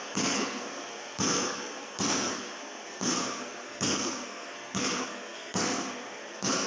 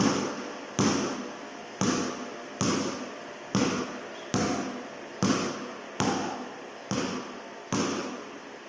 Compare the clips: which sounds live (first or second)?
second